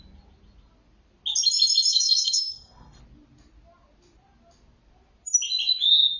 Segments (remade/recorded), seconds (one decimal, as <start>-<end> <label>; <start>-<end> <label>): 0.0-1.9 recorded; 1.9-3.0 remade; 3.0-6.2 recorded